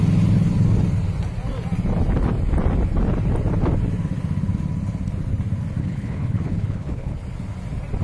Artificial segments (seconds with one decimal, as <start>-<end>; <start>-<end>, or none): 5.8-7.2